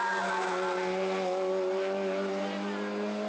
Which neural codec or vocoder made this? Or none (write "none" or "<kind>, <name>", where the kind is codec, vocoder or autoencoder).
none